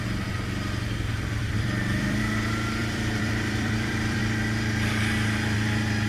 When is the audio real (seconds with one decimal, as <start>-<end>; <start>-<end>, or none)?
0.0-1.1; 2.2-2.8; 4.2-6.1

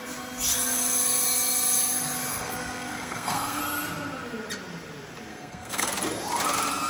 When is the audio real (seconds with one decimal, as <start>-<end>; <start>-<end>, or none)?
0.0-2.3; 3.6-5.3; 5.9-6.9

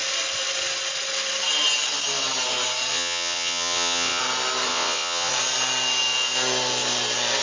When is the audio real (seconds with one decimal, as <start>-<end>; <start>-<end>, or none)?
0.0-2.9; 4.2-4.7; 5.3-7.4